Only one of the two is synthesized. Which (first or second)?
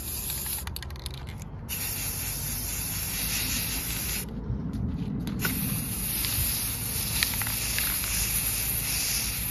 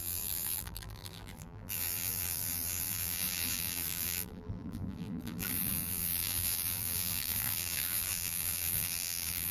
second